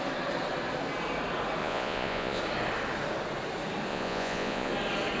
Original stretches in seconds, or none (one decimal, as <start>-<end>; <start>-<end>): 0.0-1.6; 2.4-3.9; 4.7-5.2